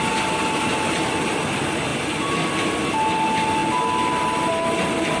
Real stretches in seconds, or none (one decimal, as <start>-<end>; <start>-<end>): 0.0-5.2